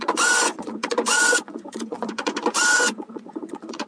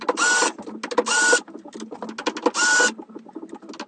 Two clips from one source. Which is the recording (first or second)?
second